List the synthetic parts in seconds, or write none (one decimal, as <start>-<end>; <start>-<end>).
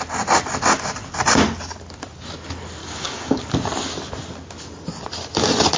2.8-3.4